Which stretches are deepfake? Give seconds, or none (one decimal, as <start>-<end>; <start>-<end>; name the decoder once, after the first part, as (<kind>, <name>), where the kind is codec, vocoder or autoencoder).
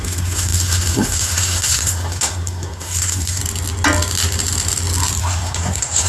0.0-3.4 (codec, SNAC); 5.2-6.1